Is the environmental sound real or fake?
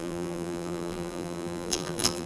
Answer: fake